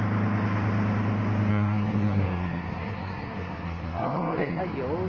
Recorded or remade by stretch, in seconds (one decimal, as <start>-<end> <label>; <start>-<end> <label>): 0.0-1.5 recorded; 1.5-4.6 remade; 4.6-5.1 recorded